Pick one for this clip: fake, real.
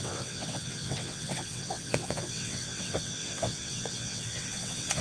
fake